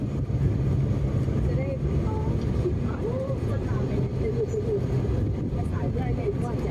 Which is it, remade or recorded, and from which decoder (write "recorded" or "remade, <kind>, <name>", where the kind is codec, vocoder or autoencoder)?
recorded